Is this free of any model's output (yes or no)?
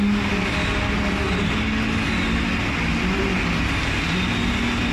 yes